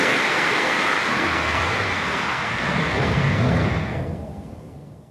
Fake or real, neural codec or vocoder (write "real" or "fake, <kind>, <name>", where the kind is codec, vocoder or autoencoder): fake, codec, SNAC